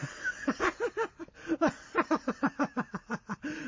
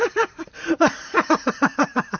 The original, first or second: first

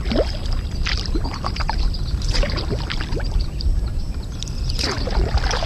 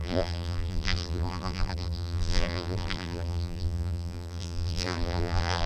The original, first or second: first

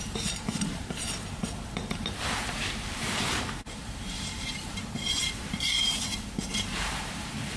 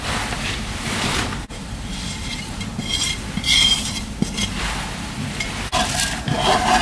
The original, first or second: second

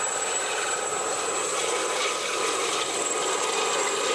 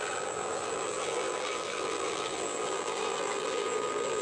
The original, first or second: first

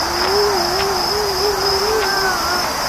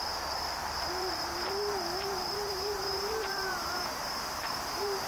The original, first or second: first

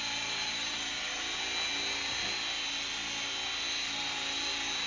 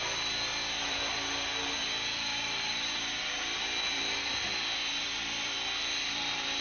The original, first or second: first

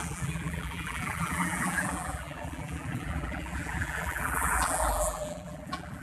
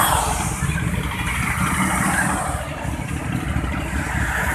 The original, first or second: second